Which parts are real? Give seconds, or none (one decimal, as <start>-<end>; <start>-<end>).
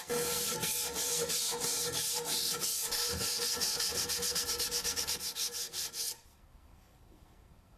none